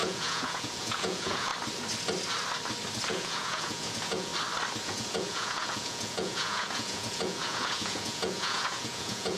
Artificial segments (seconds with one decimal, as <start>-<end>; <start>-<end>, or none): 0.0-1.5; 3.1-4.3; 4.8-9.4